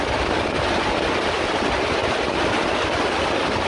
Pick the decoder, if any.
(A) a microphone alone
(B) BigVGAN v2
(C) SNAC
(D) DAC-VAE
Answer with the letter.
A